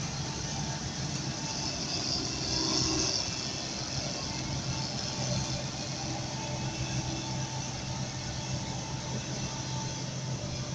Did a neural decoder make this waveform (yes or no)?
no